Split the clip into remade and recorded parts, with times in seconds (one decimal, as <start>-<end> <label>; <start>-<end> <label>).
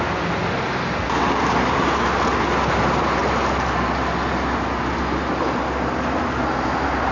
0.0-7.1 recorded